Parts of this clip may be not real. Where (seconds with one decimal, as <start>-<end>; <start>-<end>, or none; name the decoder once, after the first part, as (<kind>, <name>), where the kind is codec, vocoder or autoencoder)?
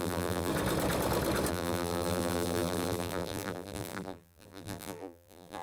0.0-0.5 (vocoder, BigVGAN v2); 1.5-5.6